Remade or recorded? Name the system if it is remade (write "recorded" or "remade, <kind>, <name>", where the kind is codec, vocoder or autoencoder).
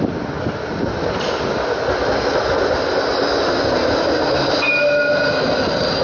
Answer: recorded